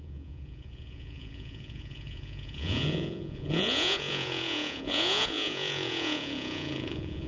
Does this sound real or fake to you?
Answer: fake